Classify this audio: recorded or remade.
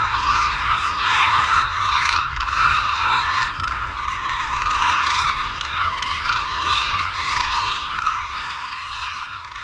remade